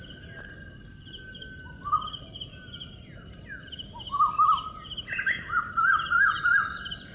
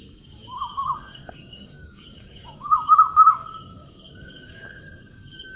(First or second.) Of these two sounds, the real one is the first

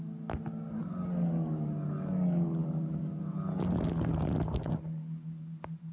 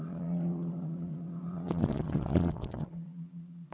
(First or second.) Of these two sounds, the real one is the first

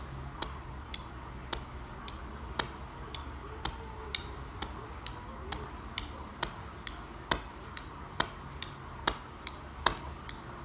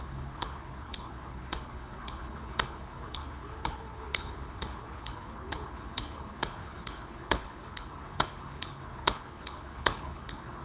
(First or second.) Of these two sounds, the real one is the first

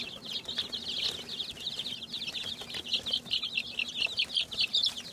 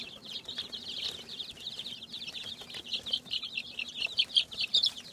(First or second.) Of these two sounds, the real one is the first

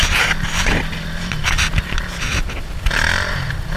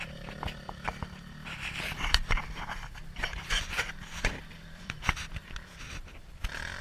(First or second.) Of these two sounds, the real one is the first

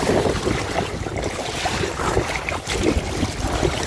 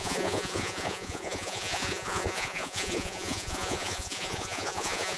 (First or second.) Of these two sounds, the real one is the first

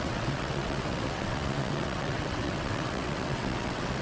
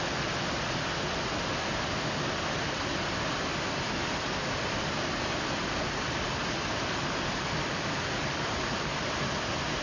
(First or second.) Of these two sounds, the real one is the second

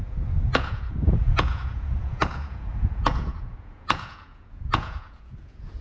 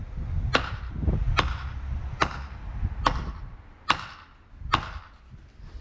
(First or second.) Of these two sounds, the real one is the second